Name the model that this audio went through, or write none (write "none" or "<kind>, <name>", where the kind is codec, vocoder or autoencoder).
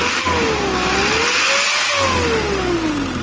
none